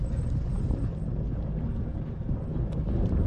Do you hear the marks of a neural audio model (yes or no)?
yes